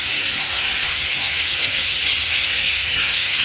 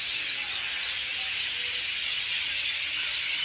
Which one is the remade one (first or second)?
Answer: first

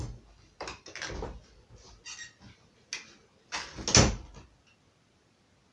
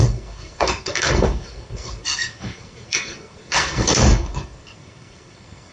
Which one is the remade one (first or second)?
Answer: second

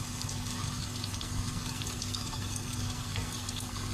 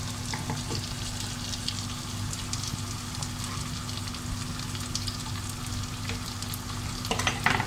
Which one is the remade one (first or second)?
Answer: first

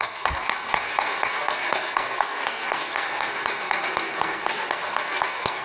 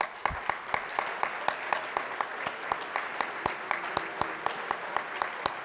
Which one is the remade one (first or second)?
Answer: first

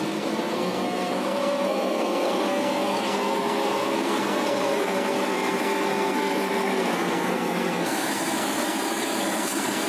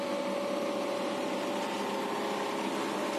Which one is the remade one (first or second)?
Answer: first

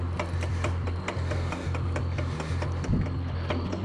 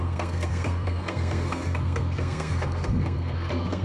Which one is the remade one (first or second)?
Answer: second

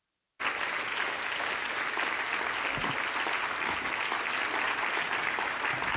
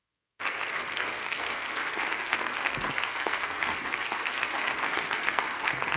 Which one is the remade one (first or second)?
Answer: second